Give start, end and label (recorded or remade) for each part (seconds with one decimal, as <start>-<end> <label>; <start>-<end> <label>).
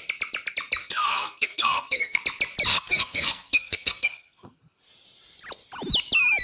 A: 0.0-0.8 recorded; 0.8-2.2 remade; 2.2-2.7 recorded; 2.7-4.6 remade; 4.6-6.4 recorded